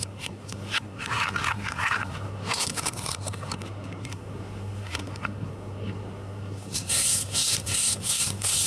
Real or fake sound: fake